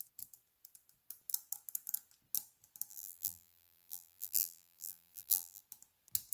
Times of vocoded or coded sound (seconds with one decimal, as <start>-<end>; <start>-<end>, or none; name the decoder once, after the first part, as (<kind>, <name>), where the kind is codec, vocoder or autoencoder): 2.9-5.6 (vocoder, BigVGAN v2)